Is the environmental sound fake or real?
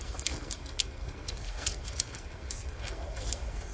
fake